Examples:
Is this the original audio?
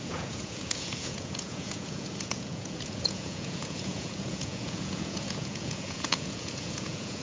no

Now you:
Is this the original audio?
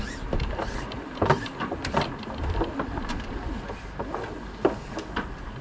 yes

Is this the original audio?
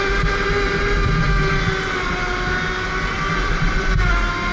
yes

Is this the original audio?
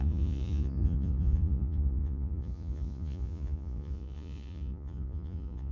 no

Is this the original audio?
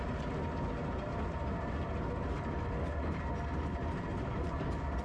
yes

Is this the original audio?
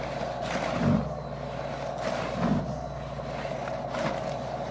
yes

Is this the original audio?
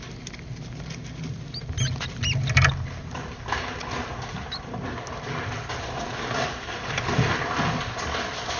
yes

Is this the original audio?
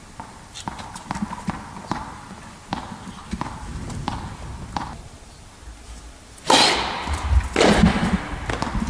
yes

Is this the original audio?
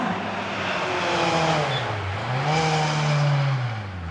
yes